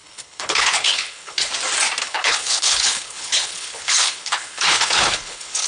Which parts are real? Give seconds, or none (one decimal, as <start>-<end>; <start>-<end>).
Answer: 1.5-2.0